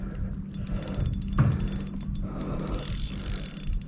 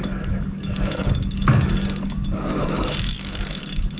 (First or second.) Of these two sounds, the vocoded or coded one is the second